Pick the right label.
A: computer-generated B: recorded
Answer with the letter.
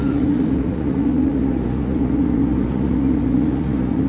A